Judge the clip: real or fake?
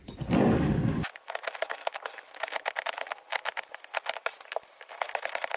real